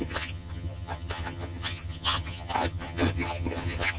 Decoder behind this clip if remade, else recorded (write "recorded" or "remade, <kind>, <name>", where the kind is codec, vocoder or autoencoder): remade, vocoder, HiFi-GAN